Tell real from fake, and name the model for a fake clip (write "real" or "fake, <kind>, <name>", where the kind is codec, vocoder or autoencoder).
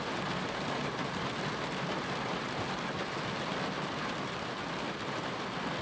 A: real